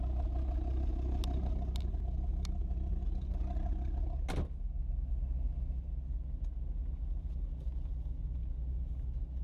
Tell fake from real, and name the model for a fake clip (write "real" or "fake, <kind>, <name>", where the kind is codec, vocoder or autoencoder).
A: real